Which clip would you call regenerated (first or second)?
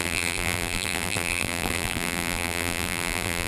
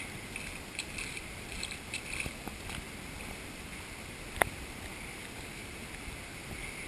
first